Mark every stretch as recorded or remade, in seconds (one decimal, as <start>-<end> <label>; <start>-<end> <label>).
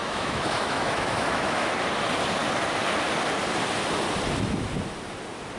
0.0-1.7 remade; 1.7-5.6 recorded